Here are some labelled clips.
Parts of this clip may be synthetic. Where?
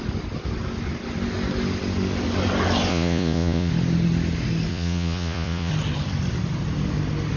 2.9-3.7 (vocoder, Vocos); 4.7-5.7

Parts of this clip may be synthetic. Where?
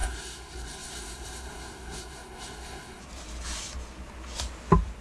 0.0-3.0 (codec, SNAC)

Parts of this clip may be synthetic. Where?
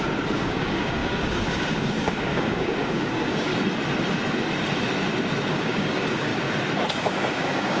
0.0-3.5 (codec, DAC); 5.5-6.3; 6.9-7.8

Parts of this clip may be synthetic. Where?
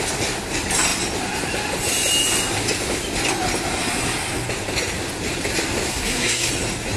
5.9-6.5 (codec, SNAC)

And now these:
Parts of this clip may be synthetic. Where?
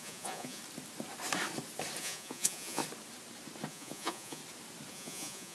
0.0-0.6 (vocoder, Vocos); 2.0-2.8; 3.7-4.4; 4.9-5.5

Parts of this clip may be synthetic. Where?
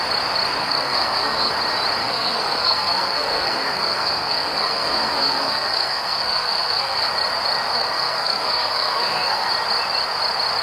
0.6-1.5 (codec, SNAC); 2.0-7.1; 7.7-9.5